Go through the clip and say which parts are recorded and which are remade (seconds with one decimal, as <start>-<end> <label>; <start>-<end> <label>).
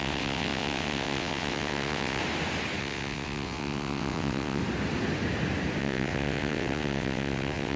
0.0-2.2 remade; 2.2-2.8 recorded; 2.8-4.6 remade; 4.6-5.8 recorded; 5.8-7.8 remade